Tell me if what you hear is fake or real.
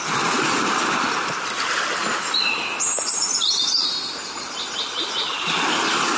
real